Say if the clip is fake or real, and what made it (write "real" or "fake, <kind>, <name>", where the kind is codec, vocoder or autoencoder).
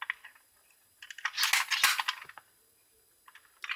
real